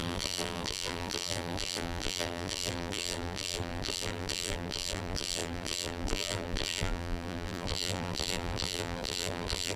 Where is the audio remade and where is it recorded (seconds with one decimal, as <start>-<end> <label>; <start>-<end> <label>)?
0.0-9.8 remade